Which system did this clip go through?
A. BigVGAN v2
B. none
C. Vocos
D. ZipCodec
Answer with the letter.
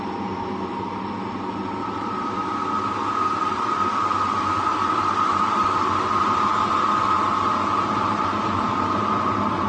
B